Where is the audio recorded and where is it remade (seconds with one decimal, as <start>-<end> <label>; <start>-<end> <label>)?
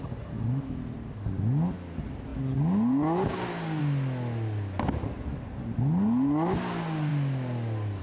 0.0-8.0 recorded